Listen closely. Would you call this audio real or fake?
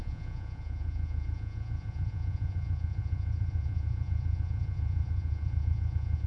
fake